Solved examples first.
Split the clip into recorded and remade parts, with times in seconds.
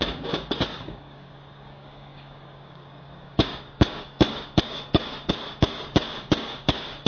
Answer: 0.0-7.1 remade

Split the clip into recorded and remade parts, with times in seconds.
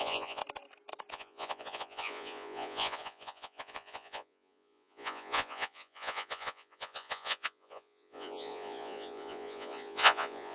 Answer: 0.0-0.4 remade; 0.4-1.1 recorded; 1.1-10.5 remade